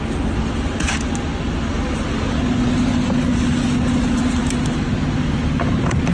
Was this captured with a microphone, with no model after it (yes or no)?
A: yes